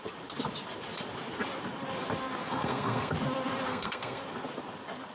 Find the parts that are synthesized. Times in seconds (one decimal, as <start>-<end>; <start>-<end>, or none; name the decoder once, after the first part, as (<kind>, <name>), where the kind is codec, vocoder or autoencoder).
2.4-3.1 (codec, SNAC); 3.7-4.2